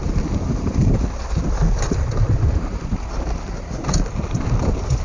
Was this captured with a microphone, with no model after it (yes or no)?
yes